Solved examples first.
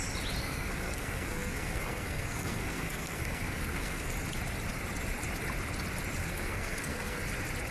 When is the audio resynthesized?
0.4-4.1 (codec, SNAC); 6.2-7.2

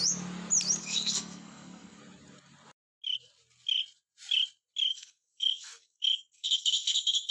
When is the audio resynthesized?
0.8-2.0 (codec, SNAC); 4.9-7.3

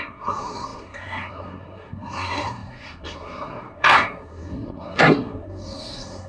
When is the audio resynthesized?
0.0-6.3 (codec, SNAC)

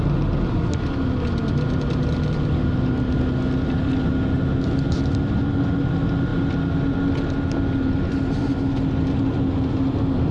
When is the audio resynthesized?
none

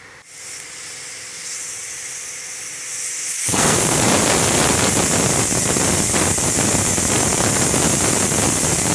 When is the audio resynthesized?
3.4-4.0 (codec, SNAC)